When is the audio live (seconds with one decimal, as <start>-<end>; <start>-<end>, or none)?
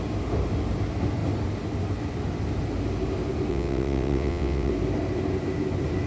0.0-3.5; 4.7-6.1